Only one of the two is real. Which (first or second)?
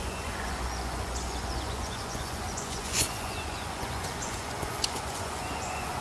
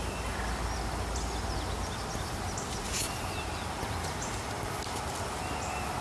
second